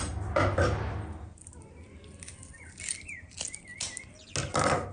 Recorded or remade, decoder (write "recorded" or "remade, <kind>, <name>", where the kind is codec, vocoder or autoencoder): recorded